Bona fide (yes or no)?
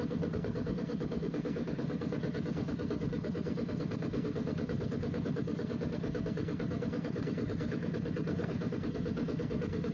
no